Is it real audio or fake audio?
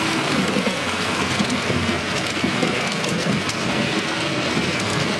fake